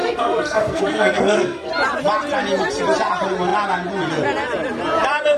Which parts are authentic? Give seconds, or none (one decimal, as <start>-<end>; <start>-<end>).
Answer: 1.7-5.4